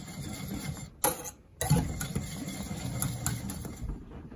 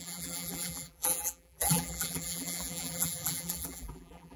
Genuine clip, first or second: first